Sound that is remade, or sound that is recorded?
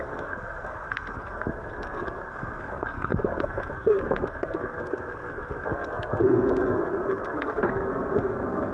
remade